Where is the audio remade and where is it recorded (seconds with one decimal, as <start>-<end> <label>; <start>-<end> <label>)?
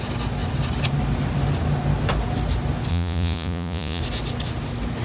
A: 0.0-2.9 recorded; 2.9-4.0 remade; 4.0-5.0 recorded